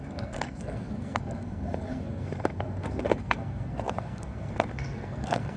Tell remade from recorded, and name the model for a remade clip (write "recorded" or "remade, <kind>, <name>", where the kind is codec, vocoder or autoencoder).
remade, codec, SNAC